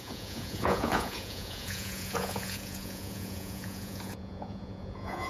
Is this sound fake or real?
fake